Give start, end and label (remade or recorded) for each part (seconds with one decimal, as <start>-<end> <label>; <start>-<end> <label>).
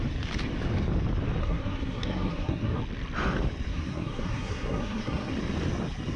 0.0-1.4 recorded; 1.4-2.8 remade; 2.8-3.7 recorded; 3.7-5.3 remade; 5.3-6.2 recorded